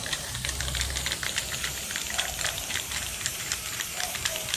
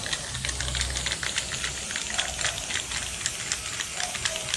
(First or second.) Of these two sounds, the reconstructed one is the first